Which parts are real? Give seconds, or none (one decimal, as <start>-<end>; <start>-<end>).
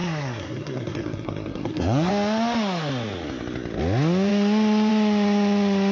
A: 2.1-5.9